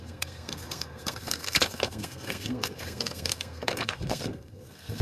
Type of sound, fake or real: fake